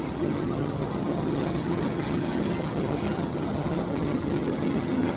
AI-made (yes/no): yes